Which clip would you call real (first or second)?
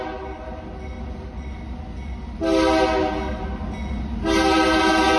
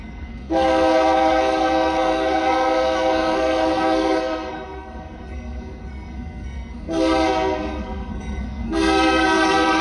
first